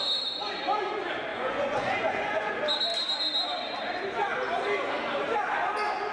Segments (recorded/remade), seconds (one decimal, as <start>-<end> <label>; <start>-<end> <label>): 0.0-1.3 recorded; 1.3-2.5 remade; 2.5-6.1 recorded

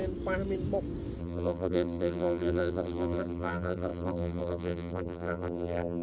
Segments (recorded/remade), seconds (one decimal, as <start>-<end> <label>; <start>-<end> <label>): 0.0-1.2 recorded; 1.2-6.0 remade

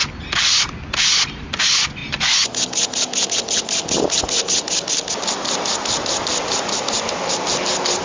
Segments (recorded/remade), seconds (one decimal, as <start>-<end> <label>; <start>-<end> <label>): 0.0-8.0 recorded

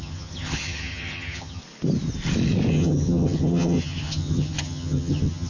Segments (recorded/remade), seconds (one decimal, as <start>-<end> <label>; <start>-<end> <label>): 0.0-1.6 remade; 1.6-2.7 recorded; 2.7-5.5 remade

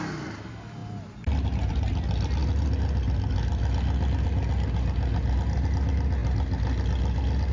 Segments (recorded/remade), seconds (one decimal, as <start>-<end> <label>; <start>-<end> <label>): 0.0-7.5 recorded

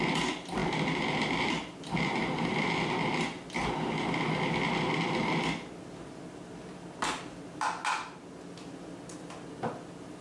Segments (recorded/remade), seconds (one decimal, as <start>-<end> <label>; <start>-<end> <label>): 0.0-10.2 recorded

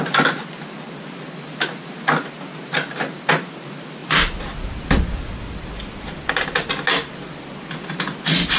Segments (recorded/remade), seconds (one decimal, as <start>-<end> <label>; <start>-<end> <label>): 0.0-4.0 recorded; 4.0-6.3 remade; 6.3-8.6 recorded

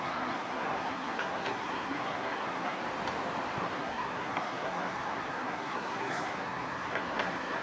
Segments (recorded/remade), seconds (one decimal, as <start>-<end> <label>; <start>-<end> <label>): 0.0-2.8 remade; 2.8-3.6 recorded; 3.6-7.6 remade